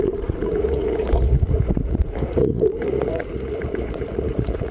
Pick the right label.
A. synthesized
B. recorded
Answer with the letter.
A